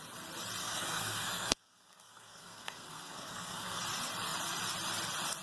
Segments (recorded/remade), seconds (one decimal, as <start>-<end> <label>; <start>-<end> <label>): 0.0-0.6 recorded; 0.6-3.8 remade; 3.8-5.4 recorded